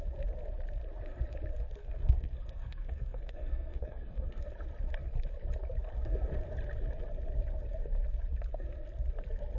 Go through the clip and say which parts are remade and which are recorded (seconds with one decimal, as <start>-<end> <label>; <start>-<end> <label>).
0.0-1.8 recorded; 1.8-4.4 remade; 4.4-9.6 recorded